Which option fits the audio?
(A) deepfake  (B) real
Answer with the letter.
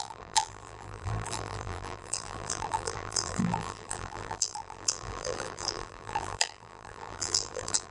A